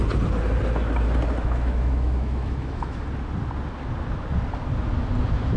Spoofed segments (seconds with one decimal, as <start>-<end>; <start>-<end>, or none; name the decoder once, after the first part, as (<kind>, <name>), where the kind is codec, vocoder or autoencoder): 1.4-3.0 (autoencoder, DAC-VAE)